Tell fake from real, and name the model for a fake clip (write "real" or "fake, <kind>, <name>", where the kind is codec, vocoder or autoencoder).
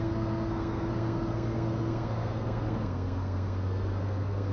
fake, codec, SNAC